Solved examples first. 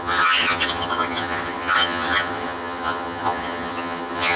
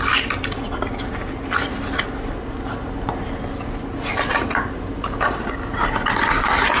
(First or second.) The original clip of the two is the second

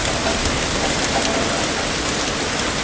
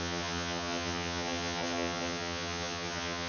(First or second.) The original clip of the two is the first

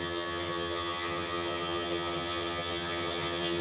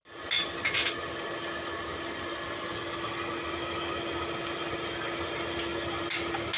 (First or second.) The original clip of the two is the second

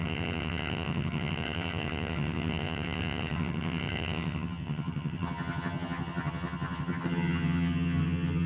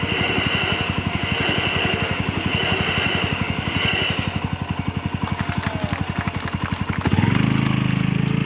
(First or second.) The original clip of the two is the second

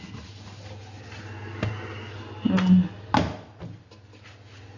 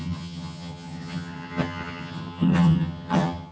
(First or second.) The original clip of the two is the first